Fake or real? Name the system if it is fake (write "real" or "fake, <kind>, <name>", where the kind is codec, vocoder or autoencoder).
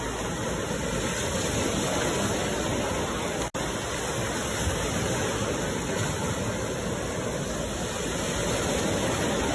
real